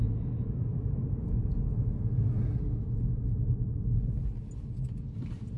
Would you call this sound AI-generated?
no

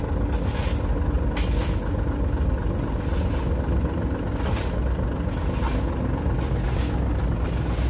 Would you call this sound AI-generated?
no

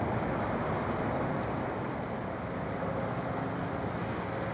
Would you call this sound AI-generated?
no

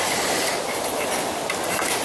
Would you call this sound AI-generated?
no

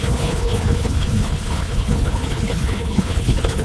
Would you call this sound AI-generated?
yes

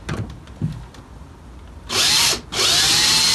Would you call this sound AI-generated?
no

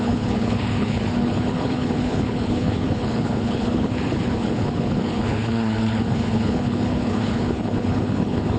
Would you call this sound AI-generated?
yes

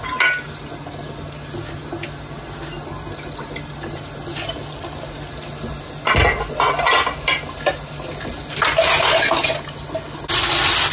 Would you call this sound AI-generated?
no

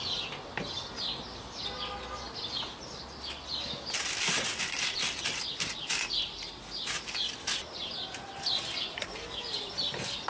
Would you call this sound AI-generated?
no